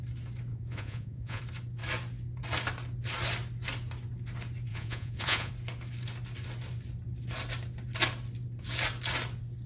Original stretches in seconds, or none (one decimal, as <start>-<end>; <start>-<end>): 0.0-0.5; 1.4-4.7; 5.5-9.7